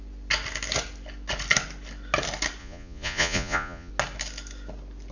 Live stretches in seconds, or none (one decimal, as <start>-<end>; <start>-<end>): 0.0-2.6; 3.9-5.1